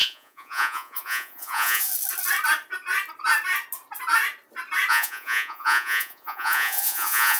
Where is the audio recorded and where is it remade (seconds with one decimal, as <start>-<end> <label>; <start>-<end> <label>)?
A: 0.0-1.9 remade; 1.9-4.9 recorded; 4.9-7.4 remade

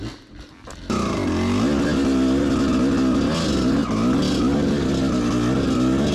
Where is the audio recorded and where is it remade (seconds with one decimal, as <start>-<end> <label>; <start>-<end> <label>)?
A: 0.0-6.1 recorded

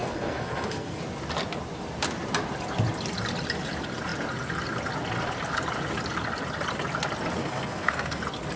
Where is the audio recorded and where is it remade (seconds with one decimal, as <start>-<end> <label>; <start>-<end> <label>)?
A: 0.0-1.0 remade; 1.0-7.4 recorded; 7.4-8.2 remade; 8.2-8.6 recorded

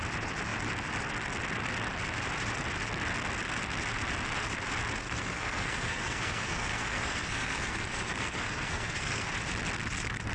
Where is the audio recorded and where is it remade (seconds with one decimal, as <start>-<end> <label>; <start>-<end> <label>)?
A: 0.0-5.0 recorded; 5.0-9.3 remade; 9.3-10.3 recorded

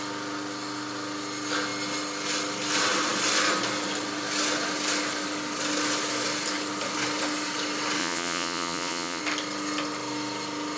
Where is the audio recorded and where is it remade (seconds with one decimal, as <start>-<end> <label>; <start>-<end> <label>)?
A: 0.0-8.0 recorded; 8.0-9.2 remade; 9.2-10.8 recorded

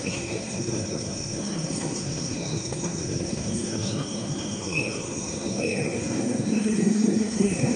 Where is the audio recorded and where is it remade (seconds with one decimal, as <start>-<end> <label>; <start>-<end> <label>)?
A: 0.0-7.8 remade